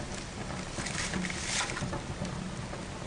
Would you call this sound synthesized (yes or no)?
no